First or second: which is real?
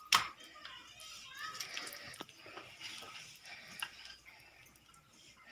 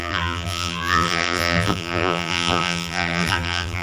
first